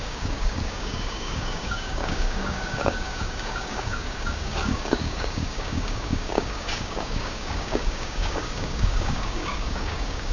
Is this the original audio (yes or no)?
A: no